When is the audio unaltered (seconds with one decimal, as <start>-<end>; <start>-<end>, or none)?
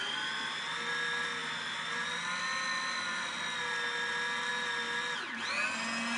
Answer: 0.0-6.2